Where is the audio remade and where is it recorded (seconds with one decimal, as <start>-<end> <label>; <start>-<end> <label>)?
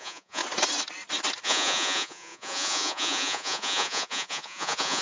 0.0-0.4 remade; 0.4-1.4 recorded; 1.4-5.0 remade